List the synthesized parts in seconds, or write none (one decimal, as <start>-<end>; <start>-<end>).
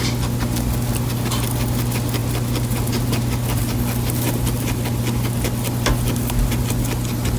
none